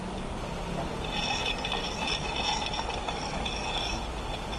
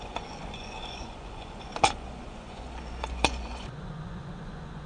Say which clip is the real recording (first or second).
first